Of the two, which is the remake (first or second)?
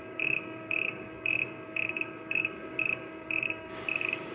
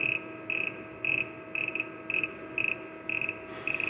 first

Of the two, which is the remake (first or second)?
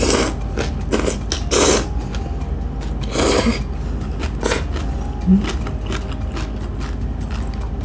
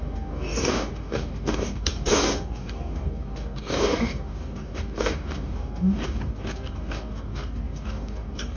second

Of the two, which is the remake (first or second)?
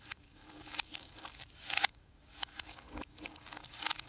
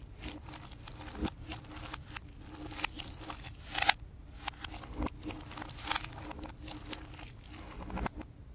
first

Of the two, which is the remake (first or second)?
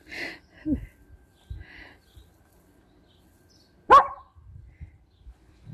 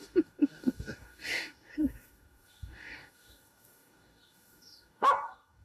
second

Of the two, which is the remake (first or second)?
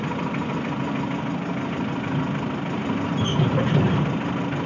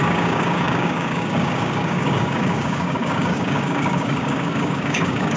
second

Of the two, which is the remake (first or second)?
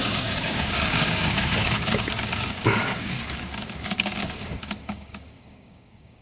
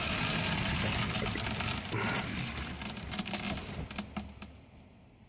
first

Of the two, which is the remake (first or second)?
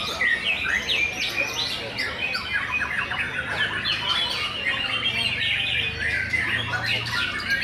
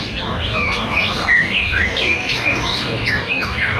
second